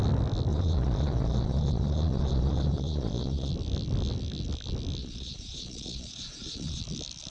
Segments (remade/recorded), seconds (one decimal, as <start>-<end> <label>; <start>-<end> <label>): 0.0-0.5 recorded; 0.5-3.5 remade; 3.5-5.0 recorded; 5.0-6.8 remade; 6.8-7.3 recorded

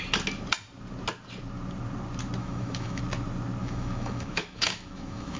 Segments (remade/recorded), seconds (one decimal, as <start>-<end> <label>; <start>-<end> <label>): 0.0-2.4 recorded; 2.4-3.0 remade; 3.0-3.6 recorded; 3.6-5.4 remade

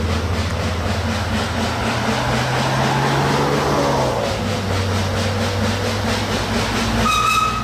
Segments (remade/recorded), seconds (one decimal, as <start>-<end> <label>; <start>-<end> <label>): 0.0-7.6 recorded

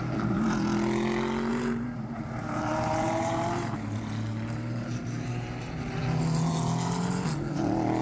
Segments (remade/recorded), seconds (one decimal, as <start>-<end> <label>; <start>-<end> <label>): 0.0-1.5 recorded; 1.5-6.0 remade; 6.0-8.0 recorded

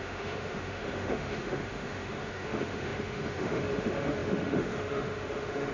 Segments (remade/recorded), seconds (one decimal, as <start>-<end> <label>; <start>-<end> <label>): 0.0-5.7 remade

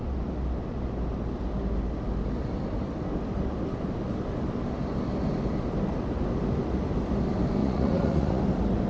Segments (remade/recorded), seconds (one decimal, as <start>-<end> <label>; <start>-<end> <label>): 0.0-7.6 recorded; 7.6-8.4 remade; 8.4-8.9 recorded

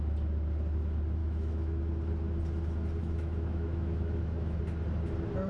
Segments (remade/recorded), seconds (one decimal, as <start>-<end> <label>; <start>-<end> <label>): 0.0-1.2 recorded; 1.2-1.8 remade; 1.8-3.0 recorded; 3.0-4.6 remade; 4.6-5.5 recorded

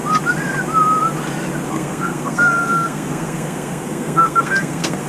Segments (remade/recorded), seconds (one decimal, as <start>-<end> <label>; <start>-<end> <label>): 0.0-1.7 recorded; 1.7-5.1 remade